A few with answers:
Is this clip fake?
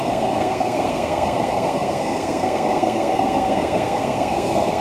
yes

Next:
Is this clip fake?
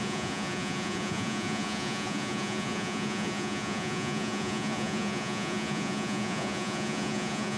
yes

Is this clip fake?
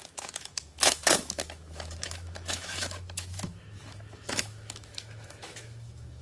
yes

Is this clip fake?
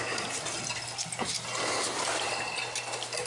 no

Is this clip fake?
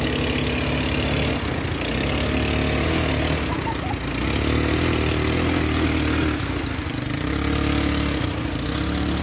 no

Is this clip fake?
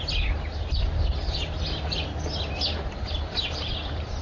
no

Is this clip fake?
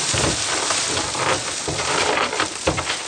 no